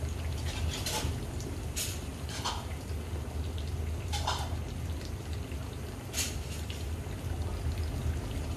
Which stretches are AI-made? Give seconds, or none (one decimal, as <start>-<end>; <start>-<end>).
0.0-2.1; 4.8-5.6; 8.0-8.6